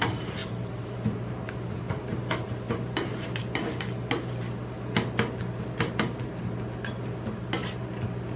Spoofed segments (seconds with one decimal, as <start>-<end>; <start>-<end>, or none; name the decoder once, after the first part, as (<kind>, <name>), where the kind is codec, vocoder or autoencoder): 0.4-1.5 (vocoder, BigVGAN v2); 2.1-3.4